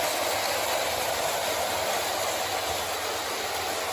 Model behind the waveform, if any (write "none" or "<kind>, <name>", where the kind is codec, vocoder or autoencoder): none